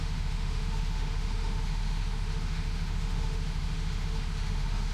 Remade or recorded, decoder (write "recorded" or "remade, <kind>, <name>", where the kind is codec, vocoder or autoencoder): remade, autoencoder, DAC-VAE